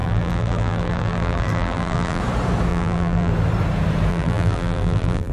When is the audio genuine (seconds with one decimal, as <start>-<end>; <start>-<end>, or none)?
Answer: 2.2-2.7; 3.3-4.1